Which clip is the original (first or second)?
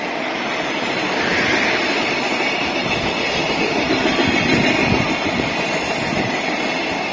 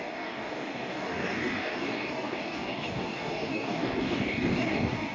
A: first